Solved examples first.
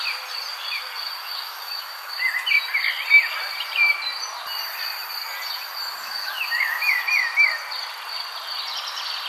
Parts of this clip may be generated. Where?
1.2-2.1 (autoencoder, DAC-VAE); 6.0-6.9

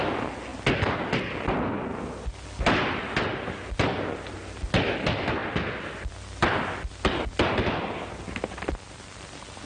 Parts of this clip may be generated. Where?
none

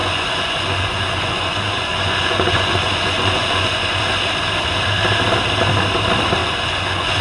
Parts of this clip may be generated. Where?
0.0-4.0 (vocoder, Vocos); 6.4-7.2

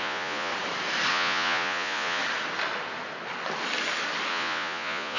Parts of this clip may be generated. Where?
0.0-0.5 (vocoder, Vocos); 1.1-2.2; 4.3-5.2

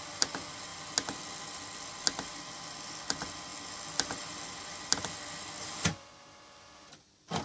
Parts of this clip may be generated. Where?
none

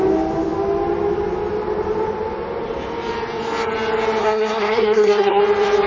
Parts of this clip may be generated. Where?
4.2-5.4 (codec, SNAC)

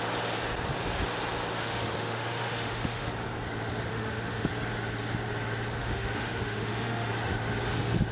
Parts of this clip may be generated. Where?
1.6-3.1 (autoencoder, DAC-VAE); 3.9-4.5; 5.8-7.1

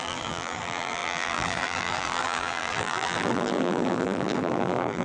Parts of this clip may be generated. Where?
0.0-5.0 (vocoder, BigVGAN v2)